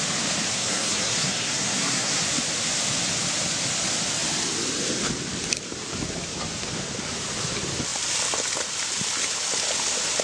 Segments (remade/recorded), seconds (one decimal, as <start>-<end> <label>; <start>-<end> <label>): 0.0-0.5 recorded; 0.5-2.2 remade; 2.2-10.2 recorded